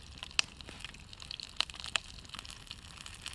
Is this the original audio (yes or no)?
yes